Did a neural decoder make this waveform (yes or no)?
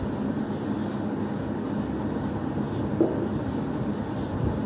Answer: no